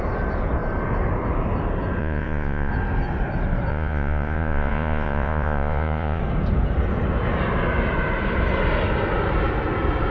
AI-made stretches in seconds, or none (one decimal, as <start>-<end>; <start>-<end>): 2.0-2.7; 3.7-6.2